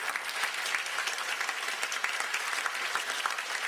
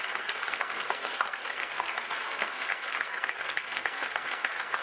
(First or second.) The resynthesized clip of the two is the second